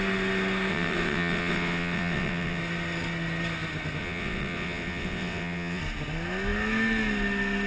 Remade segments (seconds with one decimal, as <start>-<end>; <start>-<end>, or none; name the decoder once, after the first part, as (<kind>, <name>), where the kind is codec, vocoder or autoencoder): 0.7-2.6 (vocoder, WaveNeXt); 4.0-5.8